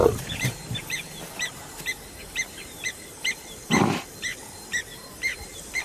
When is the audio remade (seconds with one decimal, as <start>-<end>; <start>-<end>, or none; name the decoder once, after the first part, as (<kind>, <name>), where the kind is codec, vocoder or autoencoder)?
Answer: 0.0-3.2 (vocoder, BigVGAN v2); 4.9-5.8

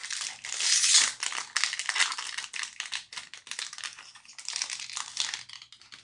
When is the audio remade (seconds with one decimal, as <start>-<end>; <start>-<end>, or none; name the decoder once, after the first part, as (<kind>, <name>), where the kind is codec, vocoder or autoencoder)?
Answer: none

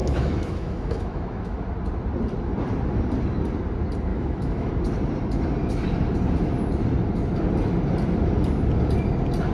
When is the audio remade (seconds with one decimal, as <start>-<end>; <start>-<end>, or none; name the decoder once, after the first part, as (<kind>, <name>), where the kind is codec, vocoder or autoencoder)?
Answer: 0.0-1.6 (autoencoder, DAC-VAE); 4.1-4.7

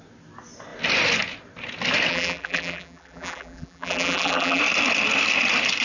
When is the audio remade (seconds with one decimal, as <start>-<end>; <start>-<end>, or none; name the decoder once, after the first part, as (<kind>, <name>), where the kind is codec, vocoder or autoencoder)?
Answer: 2.1-4.6 (vocoder, BigVGAN v2)

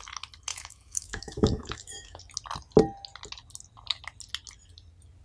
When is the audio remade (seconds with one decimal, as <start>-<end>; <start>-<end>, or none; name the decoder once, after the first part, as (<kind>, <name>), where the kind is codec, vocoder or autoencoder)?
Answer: 0.5-2.2 (autoencoder, DAC-VAE)

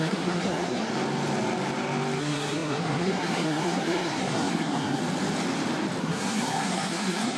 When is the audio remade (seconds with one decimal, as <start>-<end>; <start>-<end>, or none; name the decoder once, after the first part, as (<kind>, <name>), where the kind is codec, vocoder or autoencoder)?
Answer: 0.0-0.9 (codec, SNAC); 2.2-5.0; 6.0-7.4

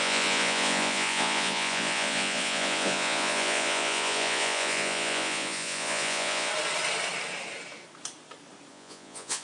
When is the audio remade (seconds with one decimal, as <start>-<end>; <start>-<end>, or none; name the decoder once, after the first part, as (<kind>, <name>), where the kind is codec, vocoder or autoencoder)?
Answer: 0.0-6.5 (vocoder, Vocos); 8.7-9.4